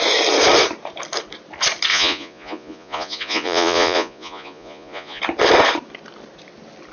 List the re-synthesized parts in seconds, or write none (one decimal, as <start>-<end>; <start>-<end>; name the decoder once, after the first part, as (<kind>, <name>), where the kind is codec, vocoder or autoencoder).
1.9-5.2 (vocoder, Vocos)